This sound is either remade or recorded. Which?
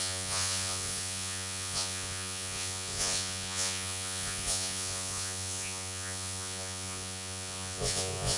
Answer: remade